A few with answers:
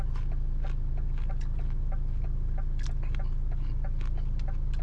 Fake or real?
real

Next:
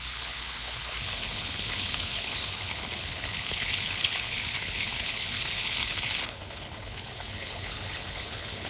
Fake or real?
fake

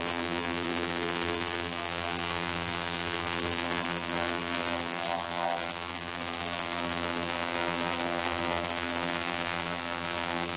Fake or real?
fake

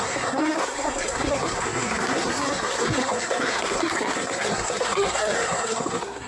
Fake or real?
fake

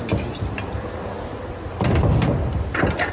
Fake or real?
real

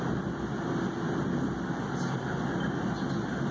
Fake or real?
real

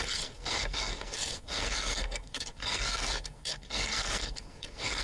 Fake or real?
fake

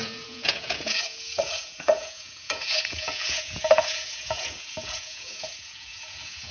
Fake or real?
fake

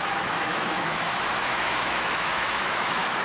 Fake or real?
fake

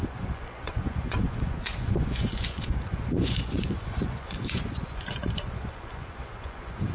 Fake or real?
fake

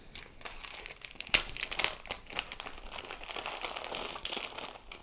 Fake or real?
real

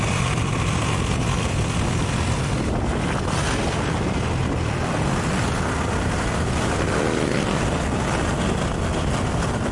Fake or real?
real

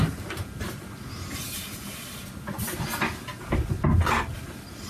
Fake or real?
fake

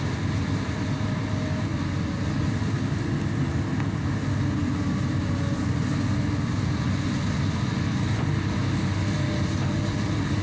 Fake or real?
real